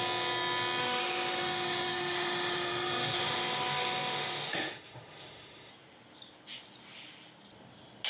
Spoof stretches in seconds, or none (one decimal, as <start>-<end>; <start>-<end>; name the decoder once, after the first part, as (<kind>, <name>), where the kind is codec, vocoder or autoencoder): 0.8-5.7 (autoencoder, DAC-VAE)